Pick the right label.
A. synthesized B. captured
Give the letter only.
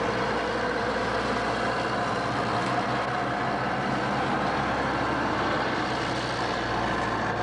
B